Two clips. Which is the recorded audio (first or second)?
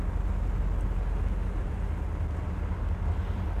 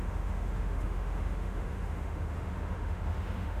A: first